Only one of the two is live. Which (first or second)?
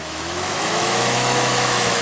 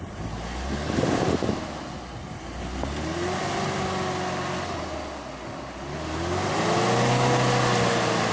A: second